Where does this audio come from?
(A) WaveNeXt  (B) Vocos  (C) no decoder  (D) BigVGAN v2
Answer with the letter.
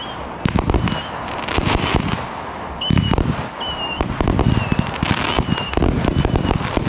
C